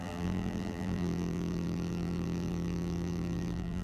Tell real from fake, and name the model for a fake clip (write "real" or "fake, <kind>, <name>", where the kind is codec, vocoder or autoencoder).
fake, vocoder, BigVGAN v2